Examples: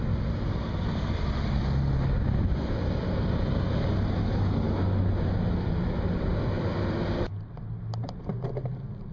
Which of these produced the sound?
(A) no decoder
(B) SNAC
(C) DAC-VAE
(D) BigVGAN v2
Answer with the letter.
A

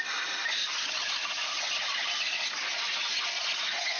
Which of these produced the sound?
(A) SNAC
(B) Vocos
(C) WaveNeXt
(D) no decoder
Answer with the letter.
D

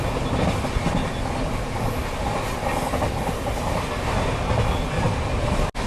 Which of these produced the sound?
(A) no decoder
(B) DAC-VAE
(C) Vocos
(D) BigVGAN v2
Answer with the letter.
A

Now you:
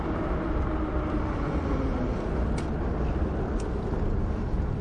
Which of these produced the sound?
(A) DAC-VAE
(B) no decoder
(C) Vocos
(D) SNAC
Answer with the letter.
B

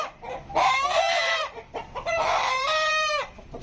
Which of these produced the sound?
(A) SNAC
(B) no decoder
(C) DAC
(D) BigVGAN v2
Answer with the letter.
D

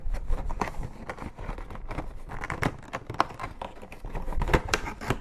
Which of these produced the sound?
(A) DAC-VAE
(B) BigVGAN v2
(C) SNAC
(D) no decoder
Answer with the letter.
D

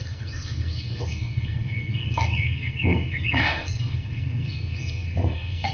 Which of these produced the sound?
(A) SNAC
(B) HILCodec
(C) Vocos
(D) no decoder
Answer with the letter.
A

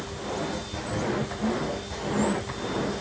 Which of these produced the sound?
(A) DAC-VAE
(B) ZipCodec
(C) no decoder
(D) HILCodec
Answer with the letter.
C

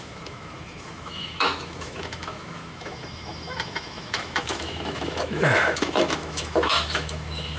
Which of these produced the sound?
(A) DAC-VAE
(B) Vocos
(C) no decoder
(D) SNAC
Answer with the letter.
A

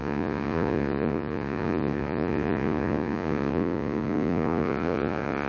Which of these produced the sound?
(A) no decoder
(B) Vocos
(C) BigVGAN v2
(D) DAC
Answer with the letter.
B